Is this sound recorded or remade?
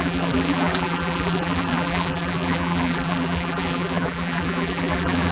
remade